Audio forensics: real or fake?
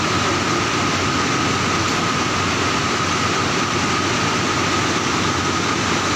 real